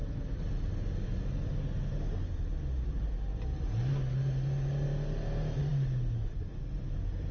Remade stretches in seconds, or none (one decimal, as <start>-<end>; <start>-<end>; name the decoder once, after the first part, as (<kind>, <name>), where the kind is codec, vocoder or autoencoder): none